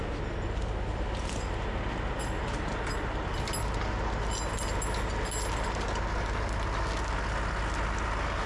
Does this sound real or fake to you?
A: real